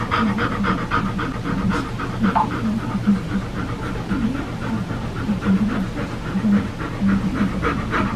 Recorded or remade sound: recorded